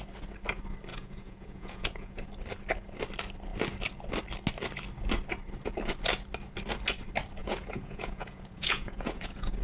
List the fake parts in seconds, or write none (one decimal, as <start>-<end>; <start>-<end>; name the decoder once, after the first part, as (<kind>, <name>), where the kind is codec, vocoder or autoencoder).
0.9-2.3 (vocoder, Vocos); 7.4-9.6